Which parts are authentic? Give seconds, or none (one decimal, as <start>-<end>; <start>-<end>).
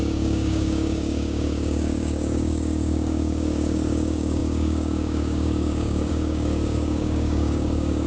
none